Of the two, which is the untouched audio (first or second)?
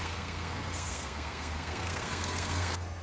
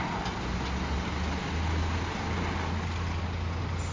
second